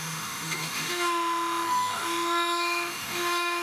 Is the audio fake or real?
fake